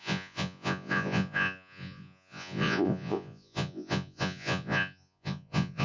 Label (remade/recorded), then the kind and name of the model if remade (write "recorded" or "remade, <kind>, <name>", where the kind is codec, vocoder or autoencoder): remade, vocoder, Vocos